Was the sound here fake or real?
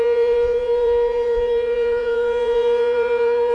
fake